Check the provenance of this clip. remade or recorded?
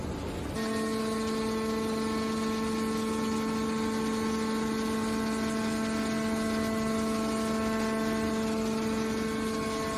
recorded